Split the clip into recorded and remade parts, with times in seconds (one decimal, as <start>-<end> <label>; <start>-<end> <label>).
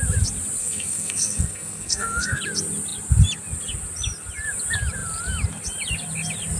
0.0-0.6 recorded; 0.6-2.4 remade; 2.4-6.6 recorded